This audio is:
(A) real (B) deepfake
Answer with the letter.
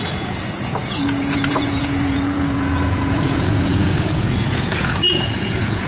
B